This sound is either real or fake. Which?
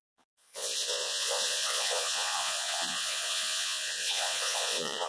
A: fake